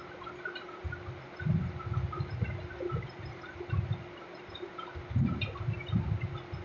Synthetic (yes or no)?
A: no